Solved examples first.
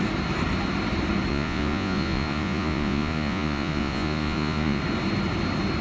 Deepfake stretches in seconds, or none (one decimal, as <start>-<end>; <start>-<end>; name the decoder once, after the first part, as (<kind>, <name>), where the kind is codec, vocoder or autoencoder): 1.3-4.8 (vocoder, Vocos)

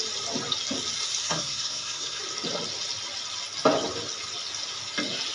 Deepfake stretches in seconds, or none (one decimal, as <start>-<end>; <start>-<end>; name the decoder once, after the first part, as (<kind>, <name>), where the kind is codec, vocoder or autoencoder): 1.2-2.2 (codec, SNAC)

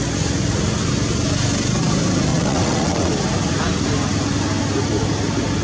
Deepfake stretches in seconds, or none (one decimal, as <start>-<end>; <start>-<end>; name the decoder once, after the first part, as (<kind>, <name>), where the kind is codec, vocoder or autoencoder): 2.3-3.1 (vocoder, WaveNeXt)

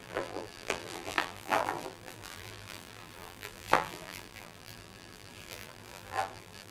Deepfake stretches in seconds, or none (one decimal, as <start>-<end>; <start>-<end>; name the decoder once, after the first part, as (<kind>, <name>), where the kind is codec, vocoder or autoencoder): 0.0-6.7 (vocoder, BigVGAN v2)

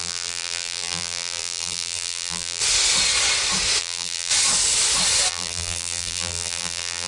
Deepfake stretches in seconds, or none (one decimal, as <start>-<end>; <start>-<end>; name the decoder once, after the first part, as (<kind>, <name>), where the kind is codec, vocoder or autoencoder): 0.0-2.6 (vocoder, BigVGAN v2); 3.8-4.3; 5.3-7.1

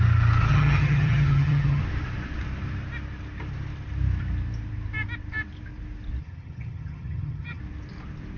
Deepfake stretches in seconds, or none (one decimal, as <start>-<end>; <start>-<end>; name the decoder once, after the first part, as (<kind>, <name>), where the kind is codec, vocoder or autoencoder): 0.5-1.8 (vocoder, HiFi-GAN); 6.2-7.6